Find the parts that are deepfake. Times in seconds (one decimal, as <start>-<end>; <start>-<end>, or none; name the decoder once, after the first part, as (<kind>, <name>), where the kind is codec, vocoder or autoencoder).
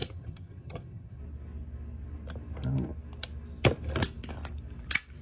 0.0-1.2 (vocoder, HiFi-GAN)